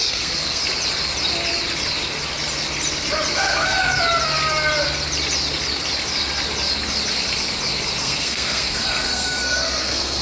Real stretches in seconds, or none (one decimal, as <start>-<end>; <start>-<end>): 0.6-3.3; 3.8-8.0

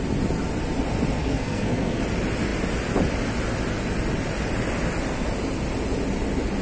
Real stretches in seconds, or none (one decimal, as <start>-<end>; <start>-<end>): 0.0-1.2; 2.0-6.6

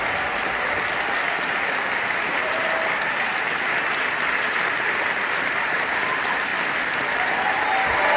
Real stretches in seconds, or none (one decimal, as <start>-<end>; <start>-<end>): 0.0-8.2

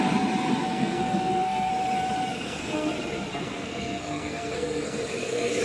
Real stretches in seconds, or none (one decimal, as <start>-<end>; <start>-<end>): 0.0-0.6; 1.7-2.3; 2.9-3.3